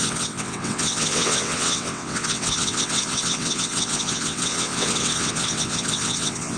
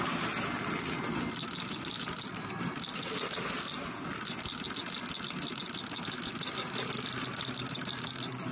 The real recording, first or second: second